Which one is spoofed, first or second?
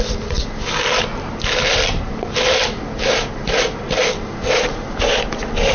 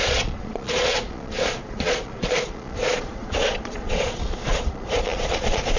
second